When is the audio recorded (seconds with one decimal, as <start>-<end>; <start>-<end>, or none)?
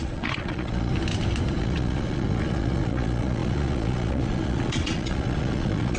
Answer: 0.9-1.6